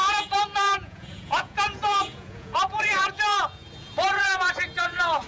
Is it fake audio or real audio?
fake